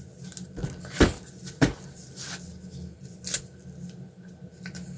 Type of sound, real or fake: real